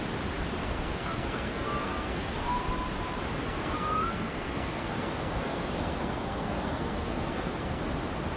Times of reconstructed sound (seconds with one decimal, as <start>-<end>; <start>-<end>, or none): 0.6-2.6; 3.4-7.8